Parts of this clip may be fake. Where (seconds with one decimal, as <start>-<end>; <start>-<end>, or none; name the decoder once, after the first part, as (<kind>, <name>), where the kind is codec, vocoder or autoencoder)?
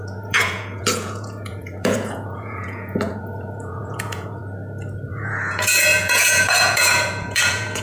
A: 0.0-4.4 (vocoder, Vocos); 5.1-7.8